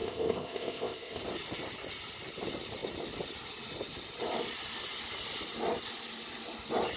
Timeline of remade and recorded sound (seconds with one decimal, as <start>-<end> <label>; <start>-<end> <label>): 0.0-1.2 remade; 1.2-7.0 recorded